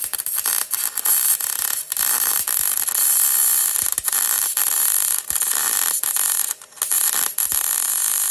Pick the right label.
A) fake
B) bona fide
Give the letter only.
B